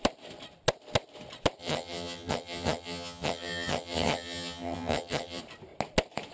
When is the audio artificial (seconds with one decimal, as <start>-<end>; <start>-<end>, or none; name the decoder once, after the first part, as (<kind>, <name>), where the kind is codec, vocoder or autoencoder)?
1.6-5.4 (vocoder, HiFi-GAN)